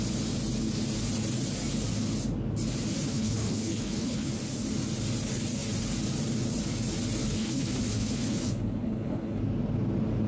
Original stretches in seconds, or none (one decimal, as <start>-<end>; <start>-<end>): 0.0-3.1; 4.3-7.2; 9.4-10.3